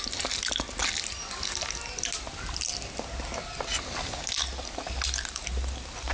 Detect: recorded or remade recorded